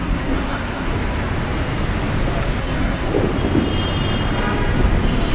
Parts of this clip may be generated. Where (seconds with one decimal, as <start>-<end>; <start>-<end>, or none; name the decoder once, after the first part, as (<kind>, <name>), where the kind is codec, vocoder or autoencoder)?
0.0-0.9 (codec, SNAC); 2.6-3.1

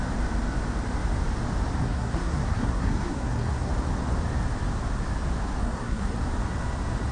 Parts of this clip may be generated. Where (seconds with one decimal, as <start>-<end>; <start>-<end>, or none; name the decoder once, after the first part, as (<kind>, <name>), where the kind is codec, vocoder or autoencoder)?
1.8-3.7 (codec, SNAC); 5.6-6.2

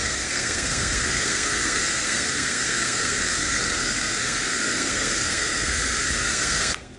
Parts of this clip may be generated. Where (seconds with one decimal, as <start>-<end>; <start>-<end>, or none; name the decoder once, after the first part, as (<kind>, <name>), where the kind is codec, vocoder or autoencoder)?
0.0-7.0 (codec, SNAC)

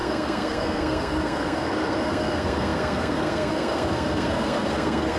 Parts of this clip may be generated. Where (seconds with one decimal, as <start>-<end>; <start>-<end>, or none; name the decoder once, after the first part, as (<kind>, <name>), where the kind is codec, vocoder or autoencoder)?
0.0-5.2 (codec, SNAC)

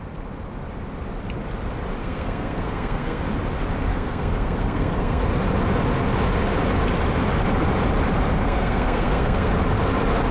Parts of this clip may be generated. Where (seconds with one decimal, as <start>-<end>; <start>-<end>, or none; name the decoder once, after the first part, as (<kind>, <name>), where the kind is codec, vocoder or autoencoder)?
2.0-3.2 (codec, SNAC); 3.9-5.2; 8.4-9.5

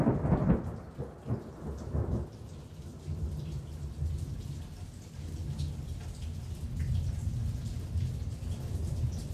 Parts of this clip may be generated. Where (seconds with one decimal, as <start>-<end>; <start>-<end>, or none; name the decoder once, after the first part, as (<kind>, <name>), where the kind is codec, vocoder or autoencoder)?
none